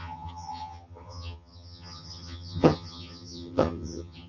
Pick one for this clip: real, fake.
fake